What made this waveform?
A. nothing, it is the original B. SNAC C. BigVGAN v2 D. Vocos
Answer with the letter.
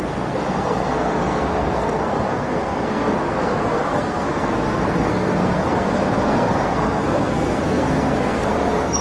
B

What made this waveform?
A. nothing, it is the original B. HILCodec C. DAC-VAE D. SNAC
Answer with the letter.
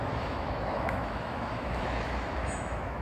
C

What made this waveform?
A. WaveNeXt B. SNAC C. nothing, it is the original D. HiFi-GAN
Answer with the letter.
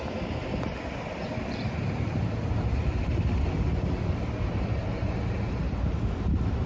C